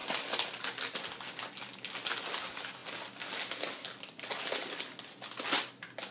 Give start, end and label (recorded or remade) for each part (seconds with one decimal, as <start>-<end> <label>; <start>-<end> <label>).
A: 0.0-6.1 recorded